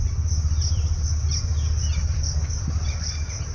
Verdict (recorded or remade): recorded